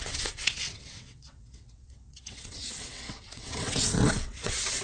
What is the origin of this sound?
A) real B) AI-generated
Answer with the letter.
B